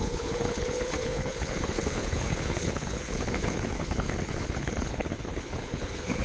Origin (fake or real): fake